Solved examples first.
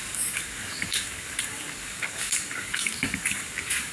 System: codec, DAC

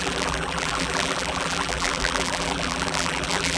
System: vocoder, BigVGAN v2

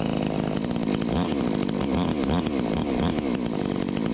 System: none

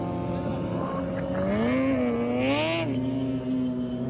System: none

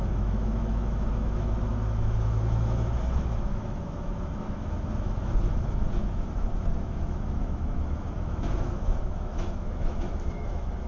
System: autoencoder, DAC-VAE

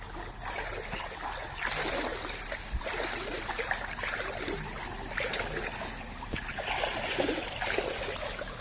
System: none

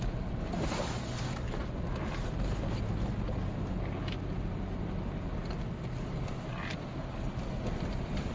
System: none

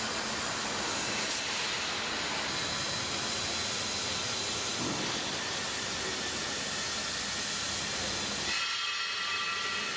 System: none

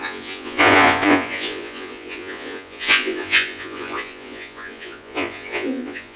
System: vocoder, Vocos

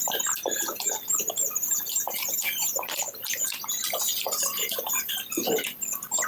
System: none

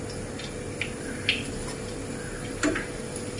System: none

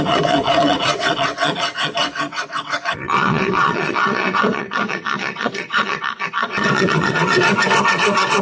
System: vocoder, WaveNeXt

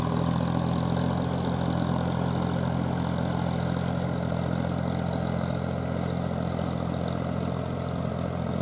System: none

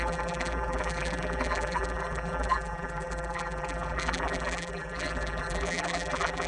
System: vocoder, BigVGAN v2